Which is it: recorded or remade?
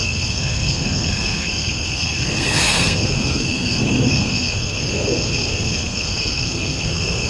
remade